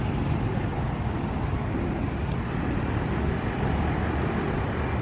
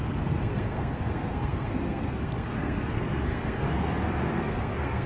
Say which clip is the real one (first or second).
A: first